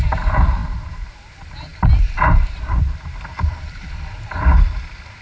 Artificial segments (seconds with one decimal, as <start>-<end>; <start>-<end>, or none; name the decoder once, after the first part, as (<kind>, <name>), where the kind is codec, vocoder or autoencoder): 0.6-1.1 (vocoder, BigVGAN v2); 3.5-4.0